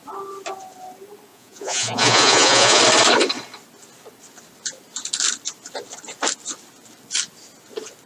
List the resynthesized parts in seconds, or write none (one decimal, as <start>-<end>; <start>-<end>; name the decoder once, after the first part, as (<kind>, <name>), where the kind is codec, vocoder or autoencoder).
1.3-2.8 (vocoder, Vocos)